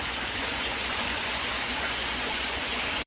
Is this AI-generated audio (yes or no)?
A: yes